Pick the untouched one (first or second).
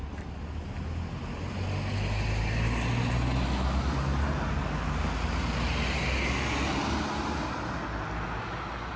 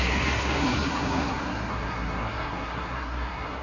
first